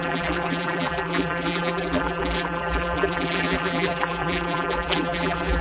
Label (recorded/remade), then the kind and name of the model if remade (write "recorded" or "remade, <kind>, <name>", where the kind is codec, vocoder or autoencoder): remade, vocoder, BigVGAN v2